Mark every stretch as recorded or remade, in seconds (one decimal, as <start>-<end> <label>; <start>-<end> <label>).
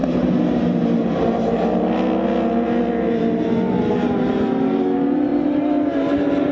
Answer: 0.0-3.9 recorded; 3.9-6.5 remade